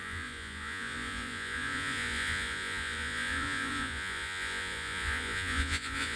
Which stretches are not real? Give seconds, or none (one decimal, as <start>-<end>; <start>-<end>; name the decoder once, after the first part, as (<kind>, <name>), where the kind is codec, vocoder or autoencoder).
0.0-6.2 (vocoder, Vocos)